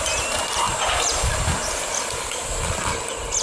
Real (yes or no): yes